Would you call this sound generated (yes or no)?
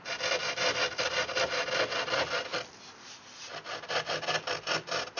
no